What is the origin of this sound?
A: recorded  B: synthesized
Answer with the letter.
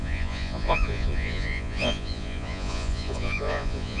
B